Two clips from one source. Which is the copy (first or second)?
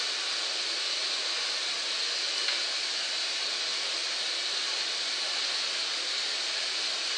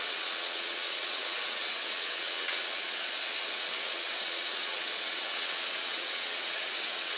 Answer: second